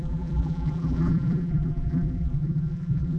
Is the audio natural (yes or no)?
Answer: no